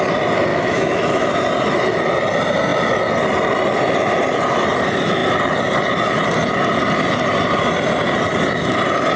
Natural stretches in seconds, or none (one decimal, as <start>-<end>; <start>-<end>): 0.0-0.5; 1.3-9.2